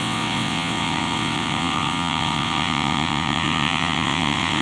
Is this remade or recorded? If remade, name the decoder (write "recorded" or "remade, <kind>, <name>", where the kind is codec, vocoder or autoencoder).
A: remade, vocoder, WaveNeXt